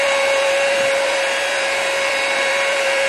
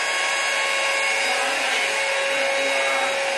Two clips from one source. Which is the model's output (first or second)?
first